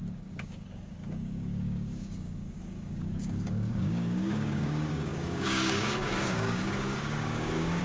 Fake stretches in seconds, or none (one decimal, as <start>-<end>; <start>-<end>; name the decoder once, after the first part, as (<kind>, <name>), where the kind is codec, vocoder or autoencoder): 0.0-7.8 (codec, DAC)